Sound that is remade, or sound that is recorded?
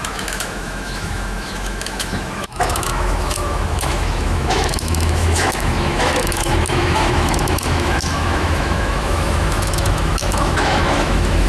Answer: remade